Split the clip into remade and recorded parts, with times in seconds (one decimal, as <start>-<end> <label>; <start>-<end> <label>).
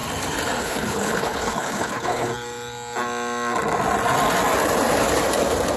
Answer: 0.0-0.6 recorded; 0.6-2.3 remade; 2.3-5.8 recorded